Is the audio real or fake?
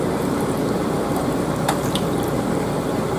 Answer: fake